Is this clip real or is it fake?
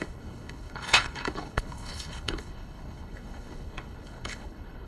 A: fake